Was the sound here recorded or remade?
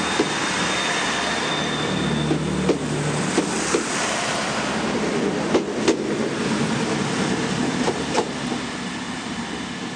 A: recorded